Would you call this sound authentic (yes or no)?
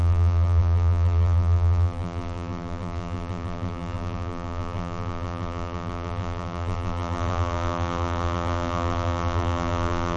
no